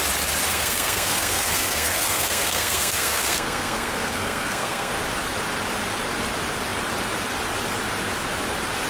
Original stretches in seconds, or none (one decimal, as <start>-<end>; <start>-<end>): 0.0-0.5; 4.9-8.9